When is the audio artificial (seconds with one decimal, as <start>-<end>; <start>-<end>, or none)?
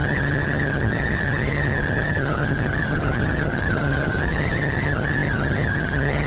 0.0-6.3